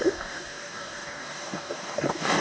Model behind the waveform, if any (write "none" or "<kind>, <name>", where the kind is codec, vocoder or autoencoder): codec, DAC